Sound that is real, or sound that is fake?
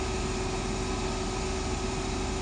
real